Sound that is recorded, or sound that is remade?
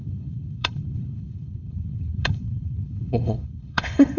remade